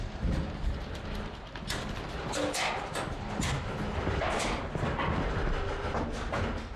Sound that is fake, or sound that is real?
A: real